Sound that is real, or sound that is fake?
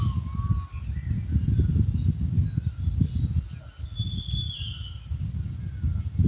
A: real